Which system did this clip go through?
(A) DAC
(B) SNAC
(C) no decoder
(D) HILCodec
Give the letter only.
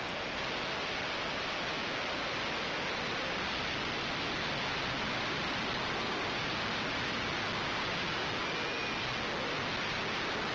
C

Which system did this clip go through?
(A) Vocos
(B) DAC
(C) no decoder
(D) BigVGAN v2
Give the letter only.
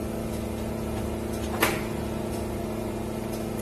C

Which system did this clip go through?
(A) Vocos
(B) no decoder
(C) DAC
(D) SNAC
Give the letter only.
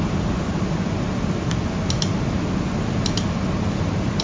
B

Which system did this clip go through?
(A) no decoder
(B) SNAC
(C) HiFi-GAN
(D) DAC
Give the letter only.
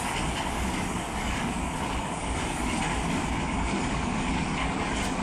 D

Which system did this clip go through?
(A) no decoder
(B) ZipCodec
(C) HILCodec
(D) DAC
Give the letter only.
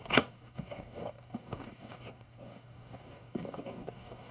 D